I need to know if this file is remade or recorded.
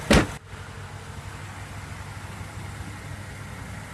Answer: recorded